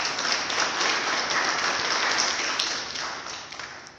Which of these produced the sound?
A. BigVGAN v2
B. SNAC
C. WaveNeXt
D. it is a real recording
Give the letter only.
D